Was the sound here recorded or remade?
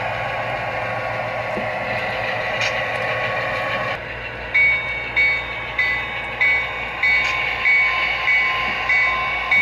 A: recorded